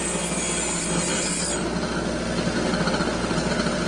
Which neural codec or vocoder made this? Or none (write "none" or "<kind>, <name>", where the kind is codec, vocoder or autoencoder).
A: none